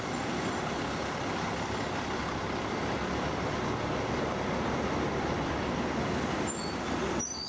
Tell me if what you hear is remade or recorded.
recorded